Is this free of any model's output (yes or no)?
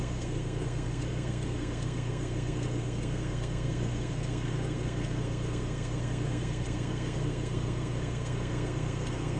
no